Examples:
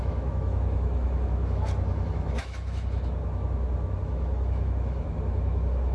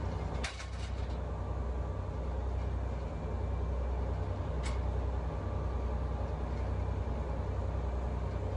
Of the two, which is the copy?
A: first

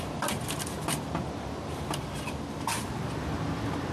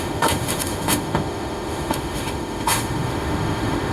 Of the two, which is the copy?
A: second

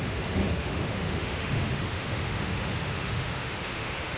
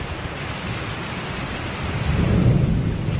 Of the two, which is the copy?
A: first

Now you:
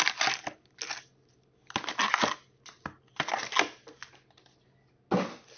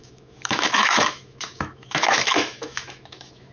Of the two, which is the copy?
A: second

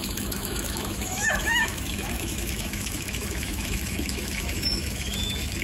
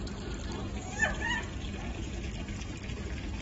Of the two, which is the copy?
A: first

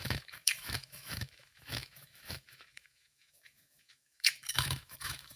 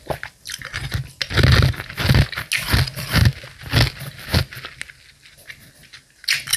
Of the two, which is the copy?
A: first